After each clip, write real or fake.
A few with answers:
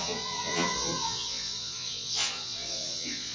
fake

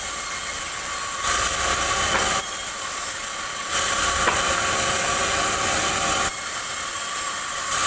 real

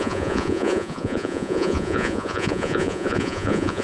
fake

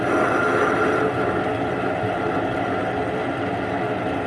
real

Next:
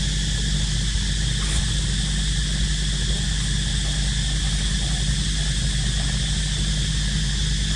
real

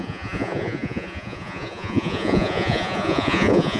fake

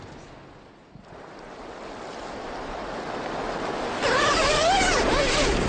real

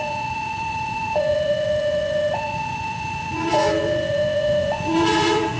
fake